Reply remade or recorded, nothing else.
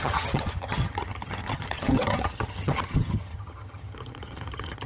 remade